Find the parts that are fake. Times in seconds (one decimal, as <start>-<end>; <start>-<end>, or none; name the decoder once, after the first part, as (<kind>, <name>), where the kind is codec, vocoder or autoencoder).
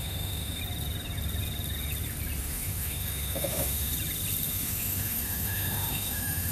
0.0-0.6 (autoencoder, DAC-VAE); 2.4-3.9; 4.5-6.5